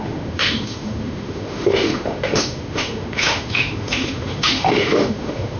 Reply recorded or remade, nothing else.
remade